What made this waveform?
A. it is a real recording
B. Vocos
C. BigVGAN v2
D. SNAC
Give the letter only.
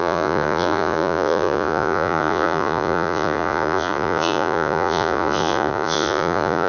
B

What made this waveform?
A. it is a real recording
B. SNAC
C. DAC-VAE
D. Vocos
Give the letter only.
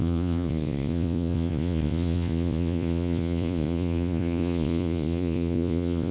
D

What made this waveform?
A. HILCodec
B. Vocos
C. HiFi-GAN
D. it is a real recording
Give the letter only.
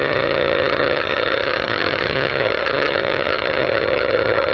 C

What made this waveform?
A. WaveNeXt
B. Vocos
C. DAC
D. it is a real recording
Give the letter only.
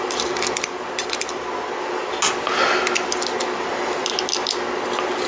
D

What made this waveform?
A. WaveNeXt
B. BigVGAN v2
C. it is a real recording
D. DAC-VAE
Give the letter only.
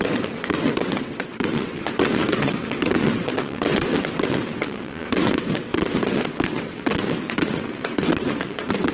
A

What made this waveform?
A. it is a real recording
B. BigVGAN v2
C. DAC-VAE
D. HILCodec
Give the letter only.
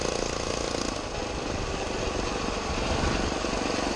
A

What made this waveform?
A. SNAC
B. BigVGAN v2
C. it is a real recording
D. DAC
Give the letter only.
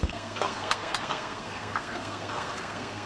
A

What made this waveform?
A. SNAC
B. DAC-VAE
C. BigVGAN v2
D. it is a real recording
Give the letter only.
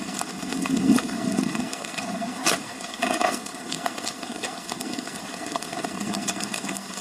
A